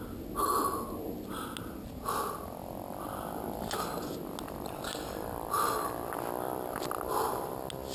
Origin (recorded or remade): recorded